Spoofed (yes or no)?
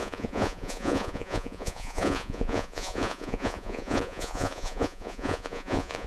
yes